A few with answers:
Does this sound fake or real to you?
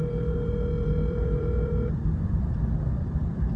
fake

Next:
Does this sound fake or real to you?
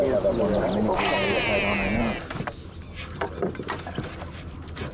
real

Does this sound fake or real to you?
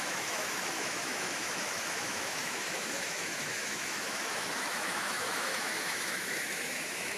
fake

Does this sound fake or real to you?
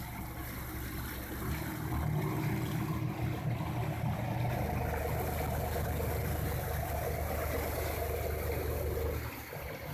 real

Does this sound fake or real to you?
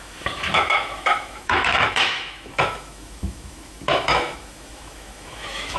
fake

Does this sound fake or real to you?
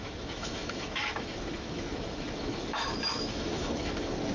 fake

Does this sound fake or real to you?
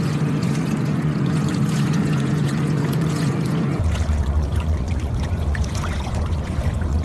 fake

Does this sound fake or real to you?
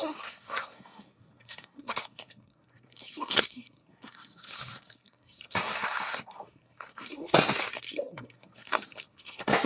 fake